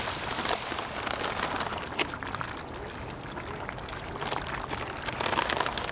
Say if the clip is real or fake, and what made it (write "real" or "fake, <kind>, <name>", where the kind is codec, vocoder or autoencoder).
real